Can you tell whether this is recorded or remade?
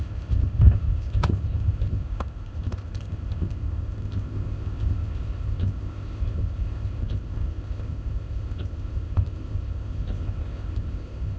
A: remade